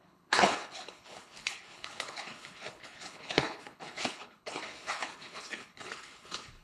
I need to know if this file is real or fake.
fake